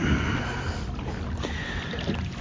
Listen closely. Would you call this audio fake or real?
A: real